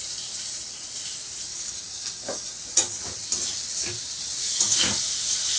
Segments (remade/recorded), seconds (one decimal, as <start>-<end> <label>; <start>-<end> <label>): 0.0-1.5 recorded; 1.5-2.5 remade; 2.5-4.4 recorded; 4.4-5.0 remade; 5.0-5.6 recorded